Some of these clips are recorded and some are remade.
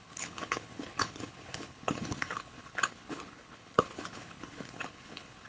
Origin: remade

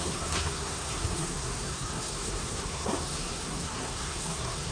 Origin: remade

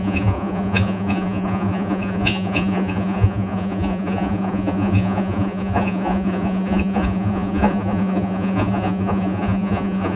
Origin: remade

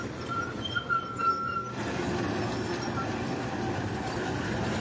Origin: recorded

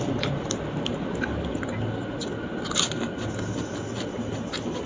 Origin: recorded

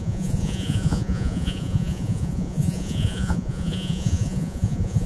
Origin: remade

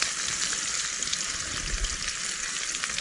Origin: recorded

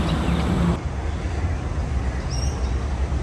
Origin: recorded